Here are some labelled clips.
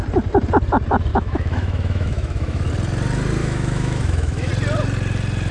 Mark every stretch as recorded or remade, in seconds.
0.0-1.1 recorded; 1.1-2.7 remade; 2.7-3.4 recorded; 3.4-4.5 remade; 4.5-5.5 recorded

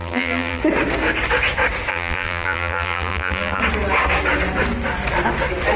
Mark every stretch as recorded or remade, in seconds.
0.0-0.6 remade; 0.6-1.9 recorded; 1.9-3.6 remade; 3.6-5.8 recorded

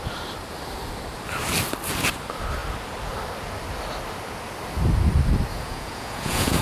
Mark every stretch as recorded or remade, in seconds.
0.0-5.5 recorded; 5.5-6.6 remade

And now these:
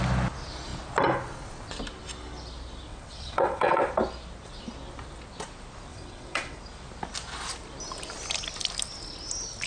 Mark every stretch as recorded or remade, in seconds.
0.0-2.9 recorded; 2.9-3.9 remade; 3.9-5.9 recorded; 5.9-6.6 remade; 6.6-9.7 recorded

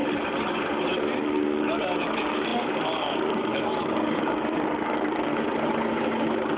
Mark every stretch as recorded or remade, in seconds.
0.0-1.2 recorded; 1.2-5.3 remade; 5.3-6.6 recorded